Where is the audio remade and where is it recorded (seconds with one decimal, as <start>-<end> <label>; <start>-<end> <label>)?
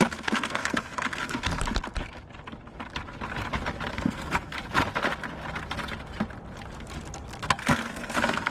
0.0-1.5 remade; 1.5-3.9 recorded; 3.9-4.6 remade; 4.6-7.4 recorded; 7.4-8.5 remade